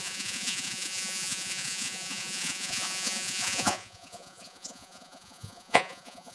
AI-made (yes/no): yes